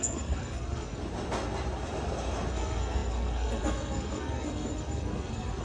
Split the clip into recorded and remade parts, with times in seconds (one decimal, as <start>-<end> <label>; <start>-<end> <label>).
0.0-1.0 remade; 1.0-2.5 recorded; 2.5-5.6 remade